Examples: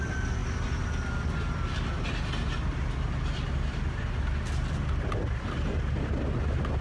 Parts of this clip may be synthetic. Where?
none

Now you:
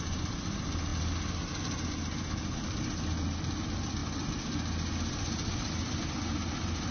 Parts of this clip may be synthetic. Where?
none

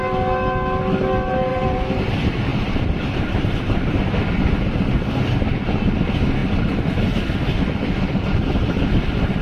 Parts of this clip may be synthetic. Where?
1.5-2.0 (vocoder, BigVGAN v2); 2.5-3.9

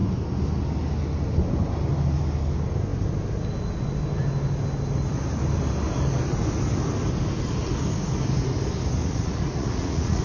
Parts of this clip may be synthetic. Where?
9.0-10.2 (vocoder, Vocos)

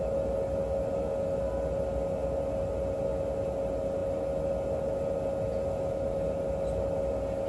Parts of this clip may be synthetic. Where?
none